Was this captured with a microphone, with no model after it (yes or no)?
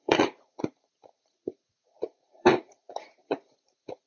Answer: no